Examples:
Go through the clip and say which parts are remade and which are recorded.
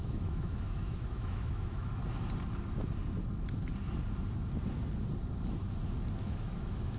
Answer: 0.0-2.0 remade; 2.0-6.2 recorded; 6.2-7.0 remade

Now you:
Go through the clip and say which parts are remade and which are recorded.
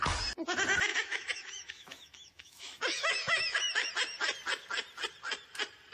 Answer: 0.0-0.9 recorded; 0.9-3.9 remade; 3.9-5.9 recorded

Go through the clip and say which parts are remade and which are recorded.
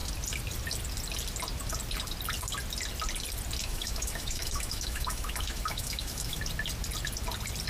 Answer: 0.0-3.6 recorded; 3.6-6.4 remade; 6.4-7.7 recorded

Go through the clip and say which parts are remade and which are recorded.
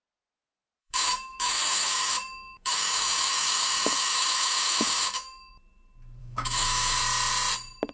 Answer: 0.0-0.8 recorded; 0.8-5.5 remade; 5.5-6.2 recorded; 6.2-7.0 remade; 7.0-7.9 recorded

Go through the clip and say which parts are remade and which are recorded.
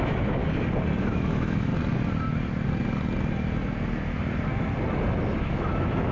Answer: 0.0-0.4 remade; 0.4-1.0 recorded; 1.0-1.7 remade; 1.7-5.4 recorded; 5.4-6.1 remade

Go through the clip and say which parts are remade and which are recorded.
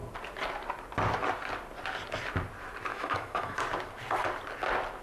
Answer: 0.0-2.9 recorded; 2.9-3.6 remade; 3.6-5.0 recorded